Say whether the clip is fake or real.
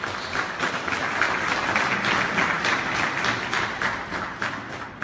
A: real